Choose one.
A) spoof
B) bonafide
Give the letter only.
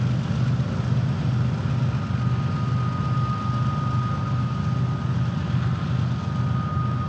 B